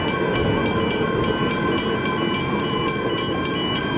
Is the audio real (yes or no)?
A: yes